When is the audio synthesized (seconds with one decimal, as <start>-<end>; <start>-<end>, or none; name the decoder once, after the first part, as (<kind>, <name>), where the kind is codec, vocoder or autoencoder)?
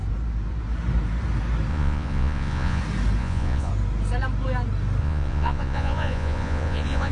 1.7-2.8 (vocoder, Vocos); 3.2-3.7; 5.0-7.1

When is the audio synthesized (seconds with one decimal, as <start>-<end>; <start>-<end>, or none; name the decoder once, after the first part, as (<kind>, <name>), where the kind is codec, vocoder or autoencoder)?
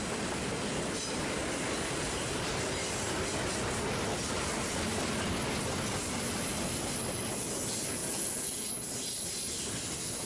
8.0-8.6 (vocoder, Vocos)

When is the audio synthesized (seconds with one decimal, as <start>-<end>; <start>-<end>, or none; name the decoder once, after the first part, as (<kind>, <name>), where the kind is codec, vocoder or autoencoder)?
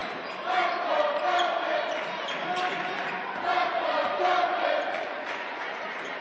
3.7-6.2 (vocoder, Vocos)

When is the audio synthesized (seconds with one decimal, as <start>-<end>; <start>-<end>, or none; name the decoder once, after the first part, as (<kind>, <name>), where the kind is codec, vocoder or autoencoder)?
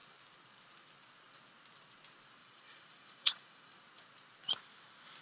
2.4-3.8 (vocoder, Vocos)